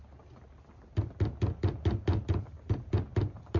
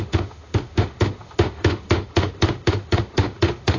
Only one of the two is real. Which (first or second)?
first